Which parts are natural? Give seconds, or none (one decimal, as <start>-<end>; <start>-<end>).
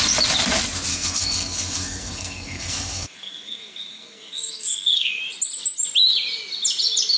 0.0-0.9; 5.2-7.2